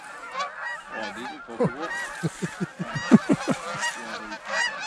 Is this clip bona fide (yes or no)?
yes